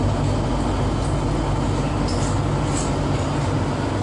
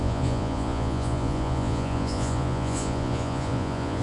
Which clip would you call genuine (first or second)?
first